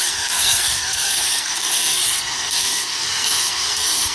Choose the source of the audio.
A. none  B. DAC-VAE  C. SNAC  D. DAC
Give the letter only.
C